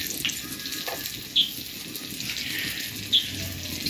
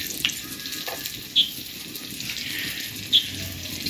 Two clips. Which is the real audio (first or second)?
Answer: first